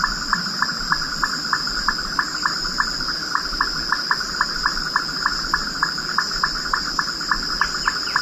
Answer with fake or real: real